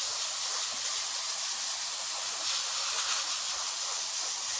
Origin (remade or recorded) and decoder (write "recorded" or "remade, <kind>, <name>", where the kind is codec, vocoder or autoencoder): recorded